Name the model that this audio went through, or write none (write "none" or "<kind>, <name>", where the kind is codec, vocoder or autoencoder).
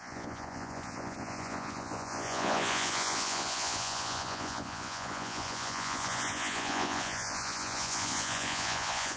vocoder, Vocos